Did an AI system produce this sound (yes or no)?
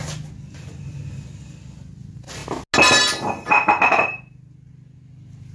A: no